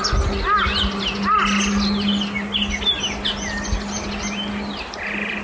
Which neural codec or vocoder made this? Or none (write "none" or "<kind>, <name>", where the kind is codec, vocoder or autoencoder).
none